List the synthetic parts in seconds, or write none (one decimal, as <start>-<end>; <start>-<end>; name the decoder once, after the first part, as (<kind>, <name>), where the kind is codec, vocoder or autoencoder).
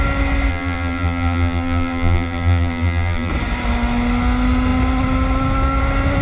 0.5-3.3 (vocoder, BigVGAN v2)